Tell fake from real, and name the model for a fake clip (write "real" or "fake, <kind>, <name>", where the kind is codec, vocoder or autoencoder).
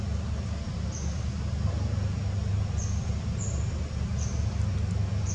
real